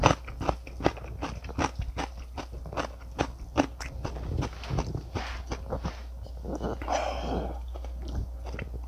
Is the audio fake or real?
real